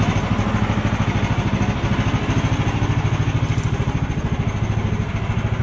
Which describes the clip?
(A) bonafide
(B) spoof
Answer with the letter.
A